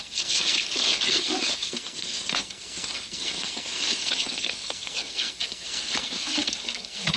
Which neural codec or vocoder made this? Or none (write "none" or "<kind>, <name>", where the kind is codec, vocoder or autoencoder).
codec, SNAC